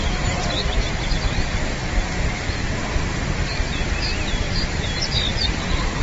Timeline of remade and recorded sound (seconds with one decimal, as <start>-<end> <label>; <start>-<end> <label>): 0.0-6.0 recorded